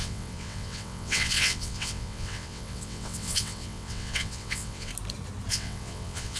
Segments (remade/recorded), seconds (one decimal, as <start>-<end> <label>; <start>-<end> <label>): 0.0-4.9 remade; 4.9-5.5 recorded; 5.5-6.4 remade